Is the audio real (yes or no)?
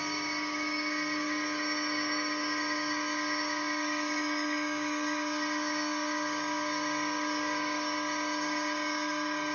no